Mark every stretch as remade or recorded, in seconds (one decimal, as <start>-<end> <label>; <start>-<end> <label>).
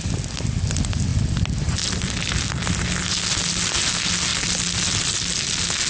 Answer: 0.0-5.9 recorded